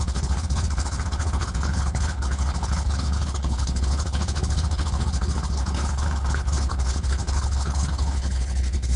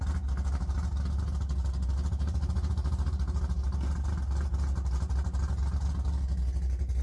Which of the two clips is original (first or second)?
second